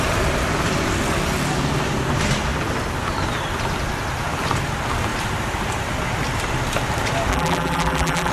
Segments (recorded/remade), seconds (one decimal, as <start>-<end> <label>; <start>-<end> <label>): 0.0-7.3 recorded; 7.3-8.3 remade